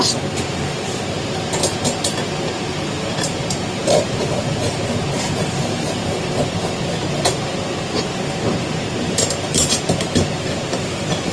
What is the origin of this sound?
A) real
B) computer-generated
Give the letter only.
B